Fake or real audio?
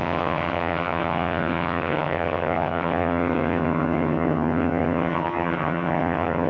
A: fake